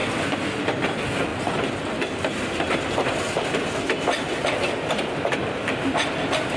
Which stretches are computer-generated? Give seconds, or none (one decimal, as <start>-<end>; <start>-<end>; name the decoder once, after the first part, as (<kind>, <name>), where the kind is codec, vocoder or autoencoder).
none

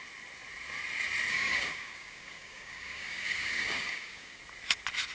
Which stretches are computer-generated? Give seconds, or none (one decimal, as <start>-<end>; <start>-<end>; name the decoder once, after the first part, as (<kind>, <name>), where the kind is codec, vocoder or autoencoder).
1.3-4.4 (codec, DAC)

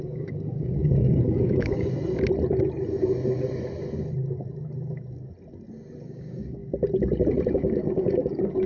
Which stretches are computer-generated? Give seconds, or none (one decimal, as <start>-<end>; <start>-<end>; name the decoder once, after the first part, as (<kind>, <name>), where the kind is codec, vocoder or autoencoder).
0.0-1.9 (codec, DAC); 6.0-6.6; 7.5-8.7

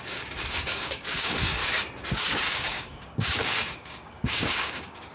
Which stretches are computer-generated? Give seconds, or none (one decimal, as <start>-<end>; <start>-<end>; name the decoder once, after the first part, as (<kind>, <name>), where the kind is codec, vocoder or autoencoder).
0.0-1.6 (codec, DAC); 2.1-5.1